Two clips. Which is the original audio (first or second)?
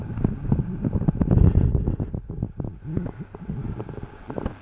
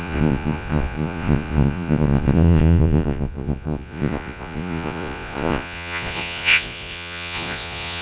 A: first